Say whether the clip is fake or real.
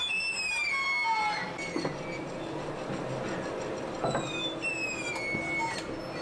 real